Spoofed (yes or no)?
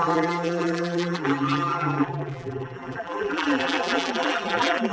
yes